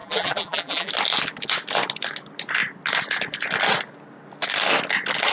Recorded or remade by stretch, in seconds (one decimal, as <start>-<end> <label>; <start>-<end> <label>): 0.0-0.9 remade; 0.9-5.3 recorded